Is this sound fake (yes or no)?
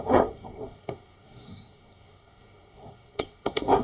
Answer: yes